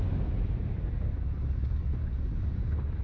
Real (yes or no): yes